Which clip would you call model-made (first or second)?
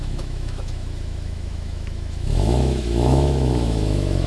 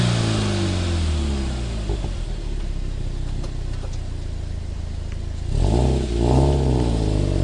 first